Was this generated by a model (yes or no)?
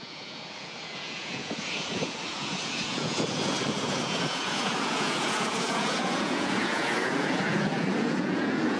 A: yes